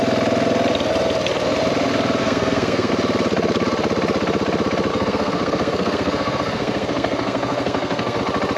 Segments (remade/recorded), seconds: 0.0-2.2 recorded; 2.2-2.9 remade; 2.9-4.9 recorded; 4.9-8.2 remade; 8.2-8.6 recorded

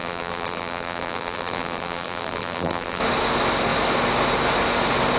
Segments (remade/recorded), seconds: 0.0-3.0 remade; 3.0-5.2 recorded